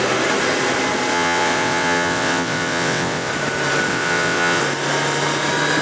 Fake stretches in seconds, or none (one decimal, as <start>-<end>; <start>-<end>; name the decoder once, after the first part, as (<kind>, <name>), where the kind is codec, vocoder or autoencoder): 1.1-3.3 (vocoder, WaveNeXt); 3.9-4.6